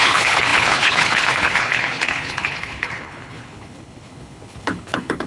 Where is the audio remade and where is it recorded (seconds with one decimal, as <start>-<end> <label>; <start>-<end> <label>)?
0.0-5.3 remade